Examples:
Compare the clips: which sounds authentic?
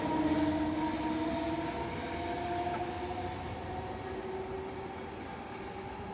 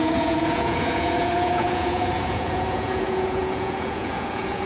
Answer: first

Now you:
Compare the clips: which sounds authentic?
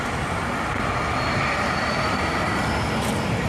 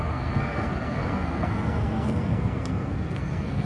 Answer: first